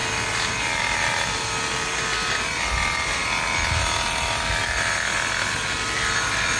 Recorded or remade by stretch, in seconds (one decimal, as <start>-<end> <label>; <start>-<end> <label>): 0.0-6.6 recorded